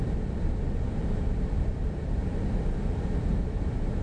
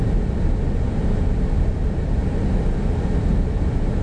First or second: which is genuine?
second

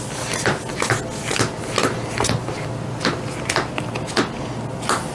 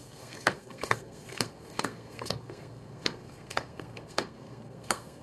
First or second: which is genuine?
first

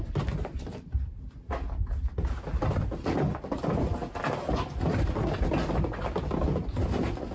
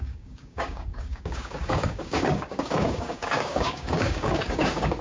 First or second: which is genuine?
first